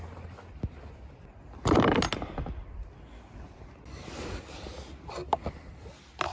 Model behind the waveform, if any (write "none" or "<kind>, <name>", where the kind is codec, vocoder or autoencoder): none